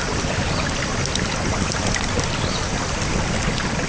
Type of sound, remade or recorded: recorded